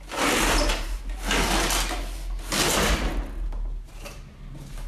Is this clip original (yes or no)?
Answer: yes